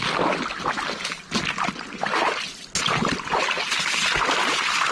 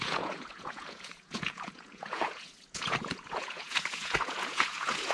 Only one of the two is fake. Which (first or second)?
second